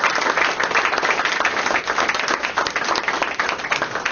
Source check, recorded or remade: recorded